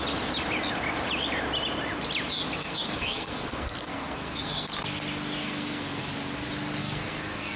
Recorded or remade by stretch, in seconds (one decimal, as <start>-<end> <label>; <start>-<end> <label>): 0.0-2.6 recorded; 2.6-4.7 remade; 4.7-5.4 recorded; 5.4-6.0 remade; 6.0-6.8 recorded; 6.8-7.6 remade